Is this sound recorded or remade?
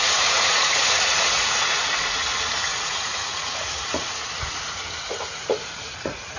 remade